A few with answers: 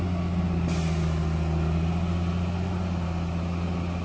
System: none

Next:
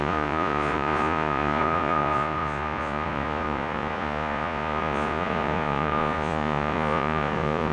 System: vocoder, Vocos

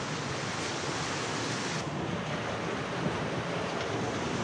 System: none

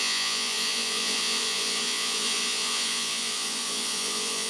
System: vocoder, Vocos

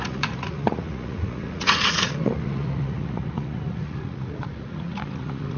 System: vocoder, Vocos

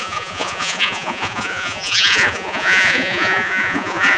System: vocoder, Vocos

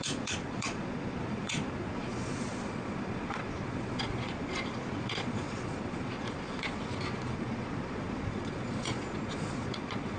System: vocoder, Vocos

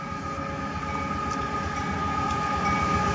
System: none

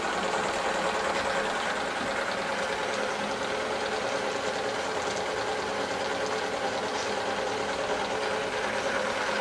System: none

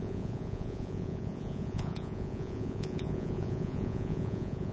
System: vocoder, Vocos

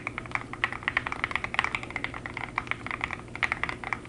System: none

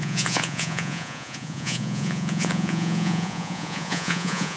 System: vocoder, Vocos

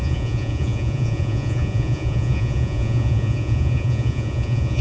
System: vocoder, Vocos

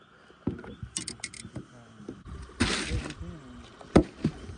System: none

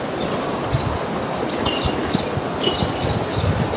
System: none